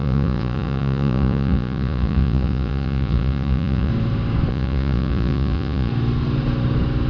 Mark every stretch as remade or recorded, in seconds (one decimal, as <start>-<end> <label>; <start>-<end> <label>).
0.0-3.9 remade; 3.9-4.5 recorded; 4.5-5.9 remade; 5.9-7.1 recorded